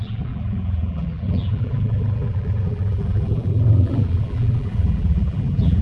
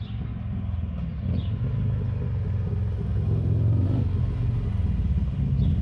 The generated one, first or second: first